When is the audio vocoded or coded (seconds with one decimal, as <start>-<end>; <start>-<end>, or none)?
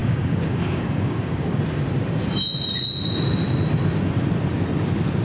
0.0-1.6